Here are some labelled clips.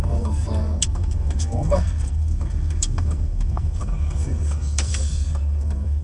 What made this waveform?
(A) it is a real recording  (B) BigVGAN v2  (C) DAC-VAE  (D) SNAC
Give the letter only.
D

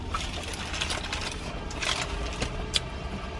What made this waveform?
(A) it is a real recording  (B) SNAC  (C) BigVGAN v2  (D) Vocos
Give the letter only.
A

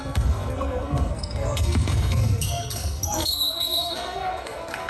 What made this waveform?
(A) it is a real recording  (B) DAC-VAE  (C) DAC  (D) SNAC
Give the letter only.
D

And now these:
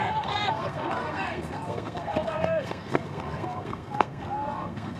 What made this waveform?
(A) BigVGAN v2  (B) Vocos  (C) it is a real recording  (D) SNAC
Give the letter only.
D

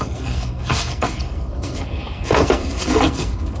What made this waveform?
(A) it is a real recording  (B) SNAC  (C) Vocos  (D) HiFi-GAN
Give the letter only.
B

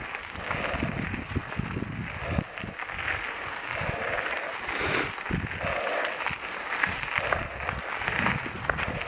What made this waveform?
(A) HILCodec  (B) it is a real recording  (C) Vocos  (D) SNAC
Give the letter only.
B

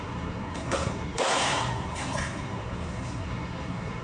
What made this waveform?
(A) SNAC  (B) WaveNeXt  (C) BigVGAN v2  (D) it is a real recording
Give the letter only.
A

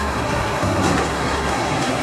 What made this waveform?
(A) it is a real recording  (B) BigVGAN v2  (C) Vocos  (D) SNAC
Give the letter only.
D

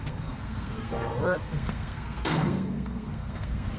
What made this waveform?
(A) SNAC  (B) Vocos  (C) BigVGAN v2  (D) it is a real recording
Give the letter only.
A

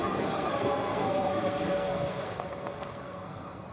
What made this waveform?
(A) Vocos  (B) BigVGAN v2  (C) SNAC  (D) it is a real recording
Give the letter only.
C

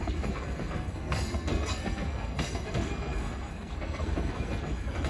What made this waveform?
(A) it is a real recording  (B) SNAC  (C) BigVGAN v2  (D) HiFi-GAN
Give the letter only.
B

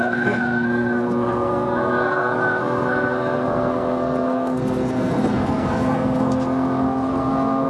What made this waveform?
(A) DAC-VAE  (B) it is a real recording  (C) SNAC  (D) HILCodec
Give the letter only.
C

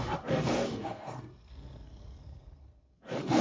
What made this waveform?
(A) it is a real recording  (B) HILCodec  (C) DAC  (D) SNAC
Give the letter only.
D